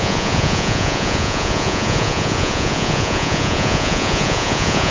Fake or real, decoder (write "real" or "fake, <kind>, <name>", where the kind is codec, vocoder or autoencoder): fake, vocoder, Vocos